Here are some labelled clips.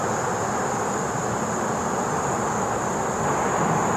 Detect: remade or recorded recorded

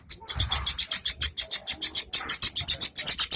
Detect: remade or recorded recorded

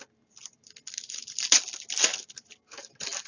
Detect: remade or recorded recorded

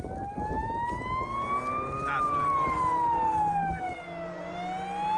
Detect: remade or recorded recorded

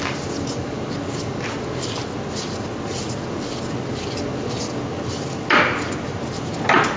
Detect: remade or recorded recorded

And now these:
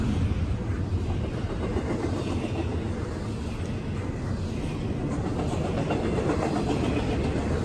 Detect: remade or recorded recorded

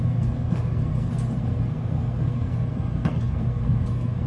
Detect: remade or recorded remade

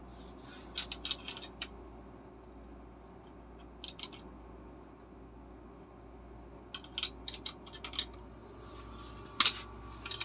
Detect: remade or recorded recorded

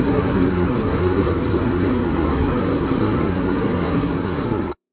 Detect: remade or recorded remade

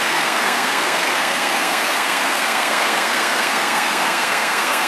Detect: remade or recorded remade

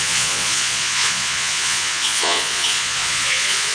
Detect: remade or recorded remade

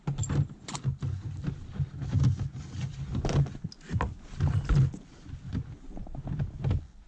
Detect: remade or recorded recorded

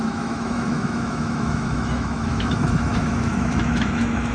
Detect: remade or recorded remade